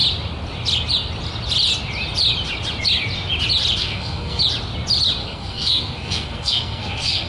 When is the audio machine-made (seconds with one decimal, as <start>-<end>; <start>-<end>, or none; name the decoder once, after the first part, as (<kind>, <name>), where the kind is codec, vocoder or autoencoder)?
3.8-4.4 (codec, SNAC); 5.2-7.3